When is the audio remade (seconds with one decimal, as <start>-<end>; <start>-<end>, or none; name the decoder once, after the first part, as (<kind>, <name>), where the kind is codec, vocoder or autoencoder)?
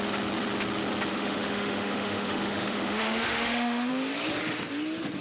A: 1.1-3.9 (autoencoder, DAC-VAE)